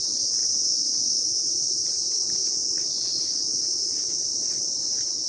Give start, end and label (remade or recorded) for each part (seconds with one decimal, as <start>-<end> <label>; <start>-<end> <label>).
0.0-0.4 remade; 0.4-1.3 recorded; 1.3-5.3 remade